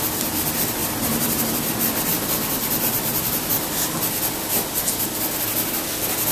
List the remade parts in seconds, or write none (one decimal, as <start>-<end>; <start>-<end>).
0.8-1.4